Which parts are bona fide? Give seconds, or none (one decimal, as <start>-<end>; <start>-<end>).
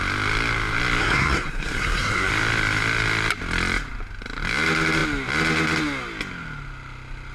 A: 0.0-1.0; 2.3-7.3